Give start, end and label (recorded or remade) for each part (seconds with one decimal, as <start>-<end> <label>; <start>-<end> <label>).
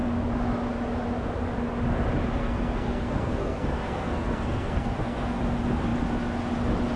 0.0-2.4 recorded; 2.4-5.4 remade; 5.4-7.0 recorded